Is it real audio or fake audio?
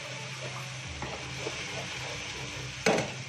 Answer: real